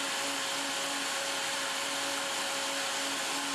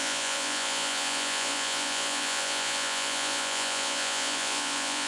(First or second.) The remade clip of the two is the second